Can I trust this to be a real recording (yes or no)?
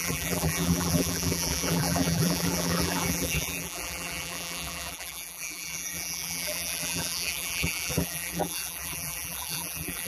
no